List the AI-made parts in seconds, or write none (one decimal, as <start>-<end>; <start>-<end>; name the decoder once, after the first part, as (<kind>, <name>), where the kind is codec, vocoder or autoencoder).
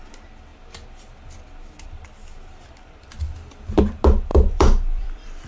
4.3-5.5 (vocoder, BigVGAN v2)